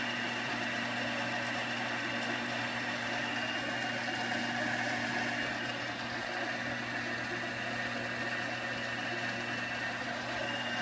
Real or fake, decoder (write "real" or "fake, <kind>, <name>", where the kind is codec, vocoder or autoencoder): real